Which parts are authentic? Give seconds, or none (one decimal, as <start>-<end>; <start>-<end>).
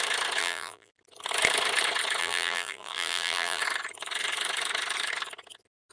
0.0-0.4; 0.9-2.2; 3.6-5.9